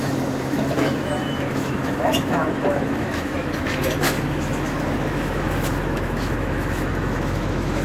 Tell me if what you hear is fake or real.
fake